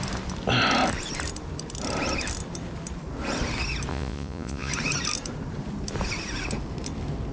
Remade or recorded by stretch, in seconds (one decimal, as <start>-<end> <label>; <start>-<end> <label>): 0.0-3.9 recorded; 3.9-4.7 remade; 4.7-7.3 recorded